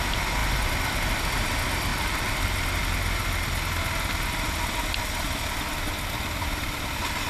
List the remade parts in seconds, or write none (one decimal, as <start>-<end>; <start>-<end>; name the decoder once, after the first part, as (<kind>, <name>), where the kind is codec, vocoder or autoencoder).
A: none